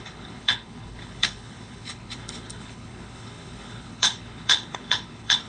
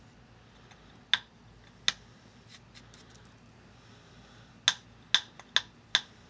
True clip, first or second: second